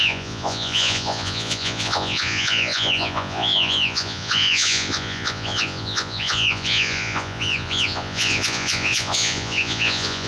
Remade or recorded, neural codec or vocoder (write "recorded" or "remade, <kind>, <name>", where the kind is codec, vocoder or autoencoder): remade, vocoder, Vocos